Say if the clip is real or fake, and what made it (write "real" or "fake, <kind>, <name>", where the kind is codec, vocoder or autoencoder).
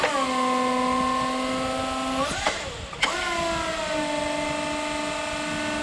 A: real